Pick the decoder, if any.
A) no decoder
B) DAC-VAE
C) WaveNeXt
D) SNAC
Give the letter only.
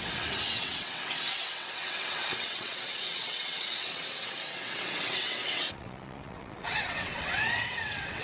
C